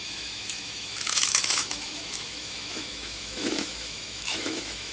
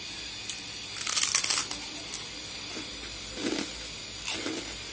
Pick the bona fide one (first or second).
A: second